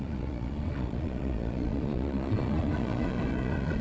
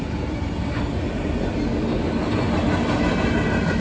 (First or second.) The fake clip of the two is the first